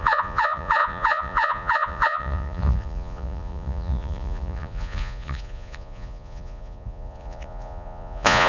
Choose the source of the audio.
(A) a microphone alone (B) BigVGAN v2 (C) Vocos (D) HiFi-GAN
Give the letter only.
C